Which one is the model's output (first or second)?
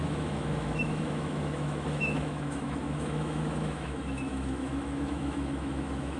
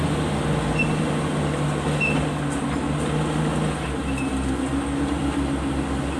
first